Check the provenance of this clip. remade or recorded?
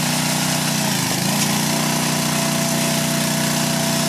recorded